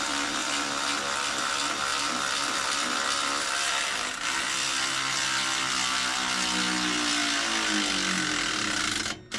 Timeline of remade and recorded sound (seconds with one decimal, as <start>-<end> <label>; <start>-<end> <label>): 0.0-9.4 recorded